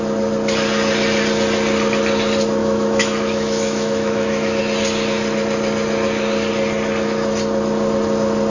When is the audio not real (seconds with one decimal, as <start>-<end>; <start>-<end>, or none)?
2.6-4.6